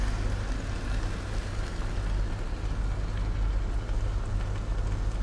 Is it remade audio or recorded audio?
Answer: recorded